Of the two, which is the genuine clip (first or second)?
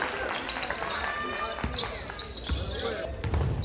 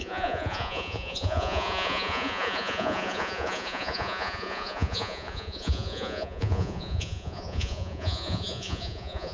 first